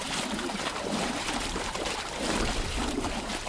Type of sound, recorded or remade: remade